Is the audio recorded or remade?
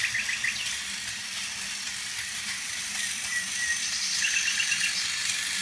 remade